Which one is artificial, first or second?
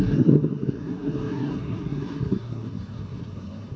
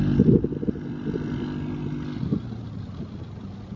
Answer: first